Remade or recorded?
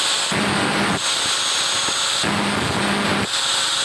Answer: recorded